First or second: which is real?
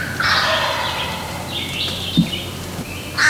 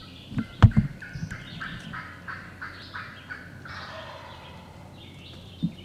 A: first